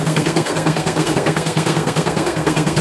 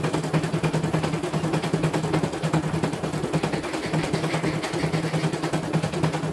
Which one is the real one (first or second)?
second